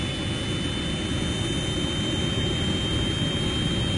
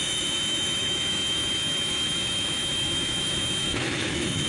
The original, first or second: first